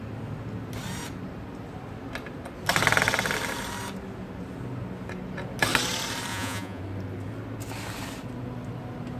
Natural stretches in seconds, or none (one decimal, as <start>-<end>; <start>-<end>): 0.0-6.3; 6.8-9.2